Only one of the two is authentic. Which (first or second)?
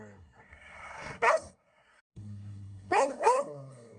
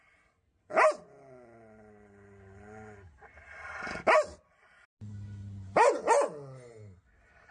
second